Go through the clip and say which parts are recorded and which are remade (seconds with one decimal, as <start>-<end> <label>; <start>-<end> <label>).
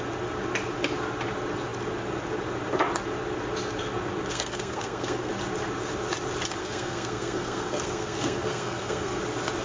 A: 0.0-4.3 recorded; 4.3-5.3 remade; 5.3-6.6 recorded; 6.6-9.2 remade; 9.2-9.6 recorded